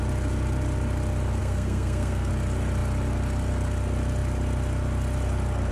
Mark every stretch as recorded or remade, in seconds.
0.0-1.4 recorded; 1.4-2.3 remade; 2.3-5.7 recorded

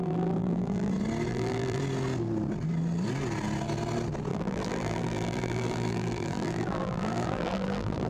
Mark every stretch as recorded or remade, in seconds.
0.0-0.9 remade; 0.9-1.3 recorded; 1.3-1.8 remade; 1.8-4.3 recorded; 4.3-8.1 remade

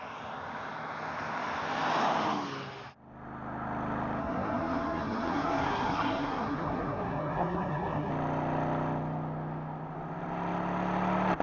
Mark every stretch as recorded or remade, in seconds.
0.0-4.2 recorded; 4.2-8.1 remade; 8.1-11.4 recorded